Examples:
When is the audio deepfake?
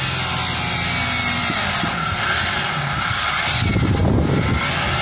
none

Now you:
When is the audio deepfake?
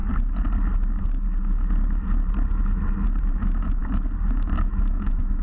3.2-3.8 (autoencoder, DAC-VAE); 4.3-5.4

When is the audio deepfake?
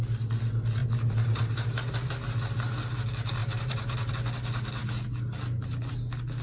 0.8-2.1 (vocoder, BigVGAN v2); 3.4-4.1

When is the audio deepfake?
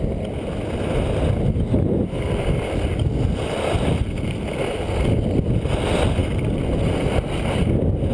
none